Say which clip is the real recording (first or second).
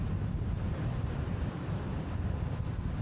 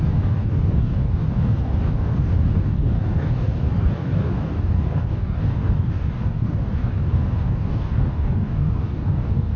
first